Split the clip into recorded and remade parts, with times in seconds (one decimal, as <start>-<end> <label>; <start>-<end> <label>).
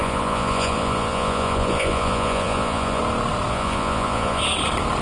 0.0-3.0 remade; 3.0-3.5 recorded; 3.5-4.4 remade; 4.4-5.0 recorded